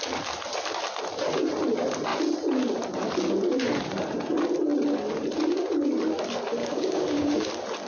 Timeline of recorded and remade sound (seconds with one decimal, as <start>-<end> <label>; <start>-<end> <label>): 0.0-6.6 recorded; 6.6-7.5 remade; 7.5-7.9 recorded